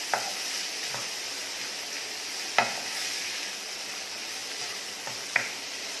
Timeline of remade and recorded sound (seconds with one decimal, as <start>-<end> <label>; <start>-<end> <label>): 0.0-1.4 remade; 1.4-3.8 recorded; 3.8-4.4 remade; 4.4-5.0 recorded; 5.0-6.0 remade